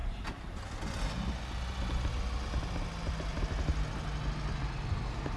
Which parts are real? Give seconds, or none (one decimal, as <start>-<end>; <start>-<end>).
0.0-5.4

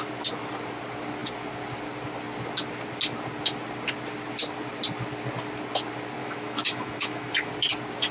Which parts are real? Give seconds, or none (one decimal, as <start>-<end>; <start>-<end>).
0.0-6.2; 7.5-8.1

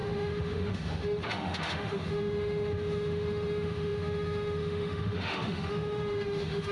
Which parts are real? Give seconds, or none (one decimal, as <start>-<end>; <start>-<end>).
none

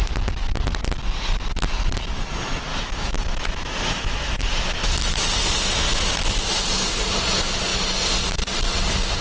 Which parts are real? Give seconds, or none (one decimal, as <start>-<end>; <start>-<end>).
0.0-2.7; 4.9-9.2

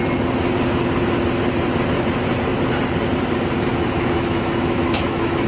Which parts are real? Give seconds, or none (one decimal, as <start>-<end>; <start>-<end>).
0.0-3.7